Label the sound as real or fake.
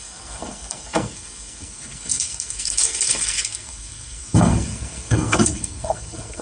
fake